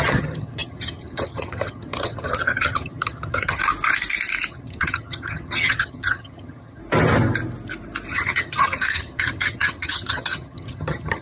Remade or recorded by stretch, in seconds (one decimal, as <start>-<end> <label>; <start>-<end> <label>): 0.0-3.6 remade; 3.6-4.5 recorded; 4.5-6.8 remade; 6.8-8.1 recorded; 8.1-11.2 remade